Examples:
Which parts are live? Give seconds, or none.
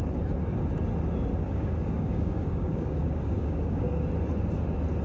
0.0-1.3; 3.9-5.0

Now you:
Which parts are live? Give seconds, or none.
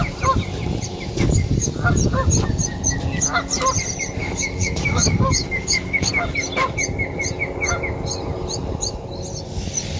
0.0-0.9; 1.7-4.2; 6.1-10.0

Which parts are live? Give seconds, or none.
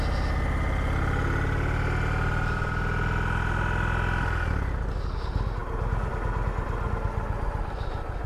0.0-8.3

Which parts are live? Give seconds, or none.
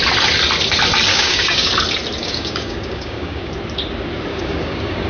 0.0-1.1; 1.7-2.2; 3.5-4.3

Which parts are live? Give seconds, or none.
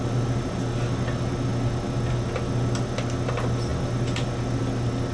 0.0-5.1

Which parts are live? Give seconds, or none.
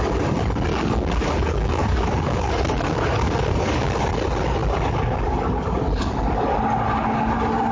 0.0-0.7; 4.0-7.7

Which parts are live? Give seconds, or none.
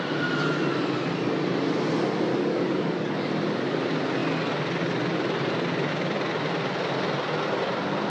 0.0-2.3; 3.3-8.1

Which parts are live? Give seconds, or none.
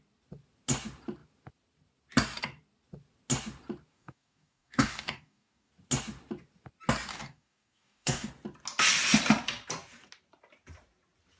0.0-3.9; 5.7-7.1; 8.3-11.4